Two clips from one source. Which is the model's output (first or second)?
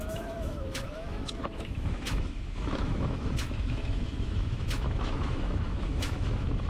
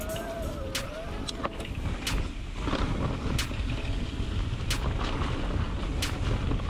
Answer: first